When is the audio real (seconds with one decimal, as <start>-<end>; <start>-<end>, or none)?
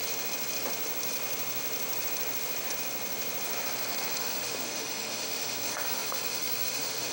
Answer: 0.0-4.2